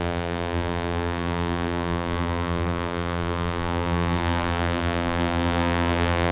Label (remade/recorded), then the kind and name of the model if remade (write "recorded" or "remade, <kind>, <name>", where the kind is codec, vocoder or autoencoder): remade, vocoder, BigVGAN v2